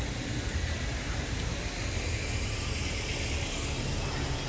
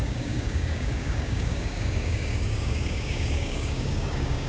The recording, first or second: first